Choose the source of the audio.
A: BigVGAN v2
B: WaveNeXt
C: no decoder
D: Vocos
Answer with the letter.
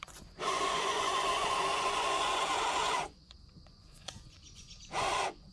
D